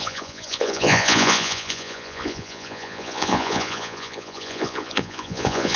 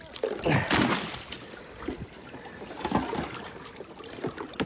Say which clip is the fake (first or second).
first